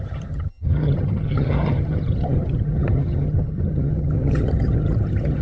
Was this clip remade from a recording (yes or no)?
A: yes